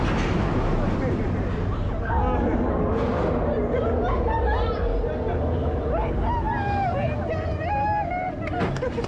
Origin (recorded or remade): recorded